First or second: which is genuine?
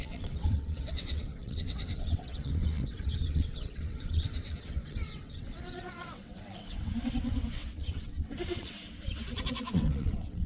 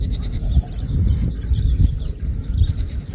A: second